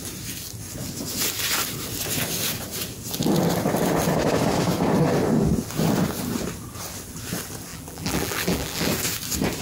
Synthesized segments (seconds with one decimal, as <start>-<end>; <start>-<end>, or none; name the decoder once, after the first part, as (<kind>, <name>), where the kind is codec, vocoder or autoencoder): 7.7-8.9 (vocoder, BigVGAN v2)